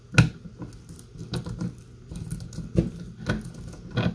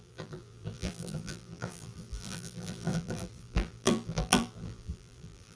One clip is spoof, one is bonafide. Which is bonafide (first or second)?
first